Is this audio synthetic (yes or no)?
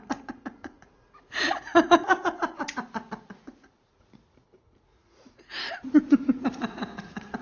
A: yes